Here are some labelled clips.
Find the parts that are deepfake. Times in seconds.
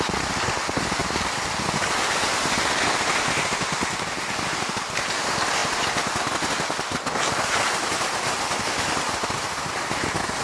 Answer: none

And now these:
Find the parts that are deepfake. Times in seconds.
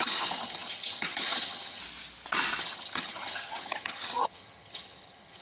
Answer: 0.0-1.8; 2.6-5.4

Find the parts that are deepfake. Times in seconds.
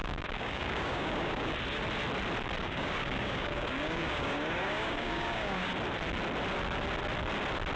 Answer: 0.0-1.5; 2.6-5.7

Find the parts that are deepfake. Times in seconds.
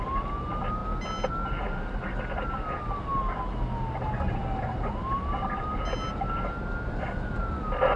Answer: none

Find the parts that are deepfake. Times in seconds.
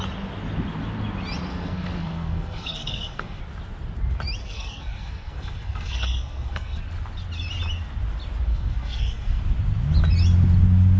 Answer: 1.5-3.4; 4.4-6.8; 8.5-9.4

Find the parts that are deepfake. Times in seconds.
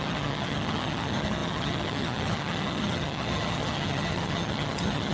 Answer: 0.0-5.1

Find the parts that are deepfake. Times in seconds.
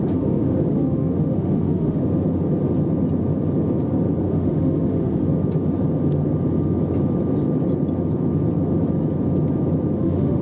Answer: 0.0-2.0; 4.2-5.3; 10.0-10.4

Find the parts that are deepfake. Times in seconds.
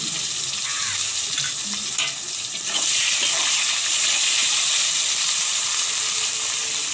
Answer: 0.0-0.8; 2.2-3.2; 5.9-6.9